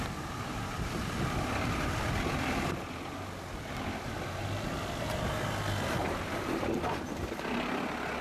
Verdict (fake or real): real